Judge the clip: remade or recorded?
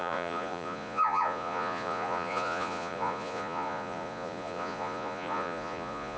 remade